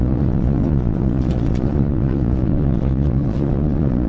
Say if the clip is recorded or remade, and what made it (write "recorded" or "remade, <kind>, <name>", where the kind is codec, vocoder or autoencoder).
remade, vocoder, Vocos